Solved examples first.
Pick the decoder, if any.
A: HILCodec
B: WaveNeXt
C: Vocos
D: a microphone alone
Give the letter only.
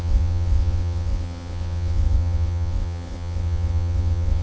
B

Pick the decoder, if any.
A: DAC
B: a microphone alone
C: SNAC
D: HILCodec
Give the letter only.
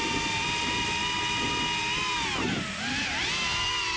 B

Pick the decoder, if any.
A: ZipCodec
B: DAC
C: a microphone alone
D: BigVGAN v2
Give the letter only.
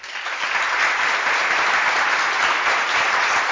C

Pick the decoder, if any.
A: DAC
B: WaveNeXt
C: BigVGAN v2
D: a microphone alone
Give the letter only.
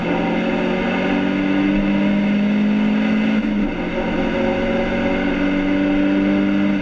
D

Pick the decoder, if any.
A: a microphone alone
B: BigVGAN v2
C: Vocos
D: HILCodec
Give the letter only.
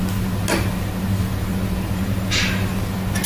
A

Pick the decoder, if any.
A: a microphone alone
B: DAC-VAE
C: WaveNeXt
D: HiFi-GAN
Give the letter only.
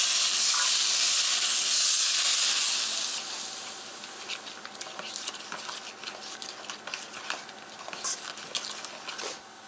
A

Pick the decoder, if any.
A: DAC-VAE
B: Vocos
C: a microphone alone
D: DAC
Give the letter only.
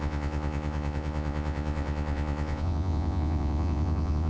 B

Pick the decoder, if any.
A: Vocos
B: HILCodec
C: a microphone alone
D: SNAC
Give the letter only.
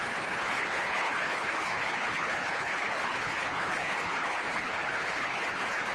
B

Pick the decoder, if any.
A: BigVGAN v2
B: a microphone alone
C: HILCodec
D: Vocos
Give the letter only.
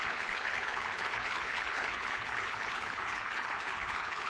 C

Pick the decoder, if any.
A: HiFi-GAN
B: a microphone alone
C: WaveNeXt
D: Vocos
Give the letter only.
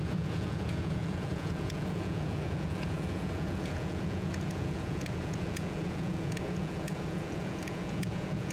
D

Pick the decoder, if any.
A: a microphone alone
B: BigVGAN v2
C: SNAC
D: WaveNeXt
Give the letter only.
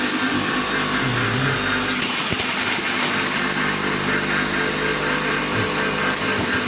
A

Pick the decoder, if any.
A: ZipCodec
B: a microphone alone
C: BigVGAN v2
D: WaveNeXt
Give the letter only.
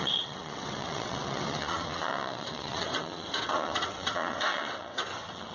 D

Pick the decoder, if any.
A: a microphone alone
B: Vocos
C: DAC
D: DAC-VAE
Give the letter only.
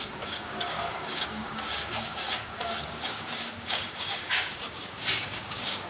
C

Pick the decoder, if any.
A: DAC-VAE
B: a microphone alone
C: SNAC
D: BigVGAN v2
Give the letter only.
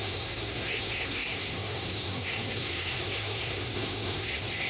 C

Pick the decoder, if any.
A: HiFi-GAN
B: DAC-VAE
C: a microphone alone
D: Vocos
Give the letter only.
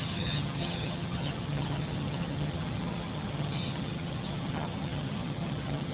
A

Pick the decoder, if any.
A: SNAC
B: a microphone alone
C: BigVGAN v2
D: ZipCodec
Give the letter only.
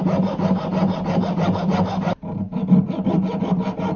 B